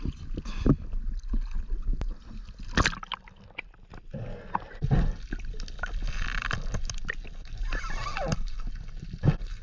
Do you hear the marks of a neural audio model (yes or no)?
no